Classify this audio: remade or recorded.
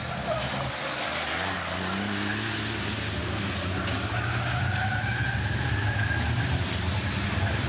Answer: recorded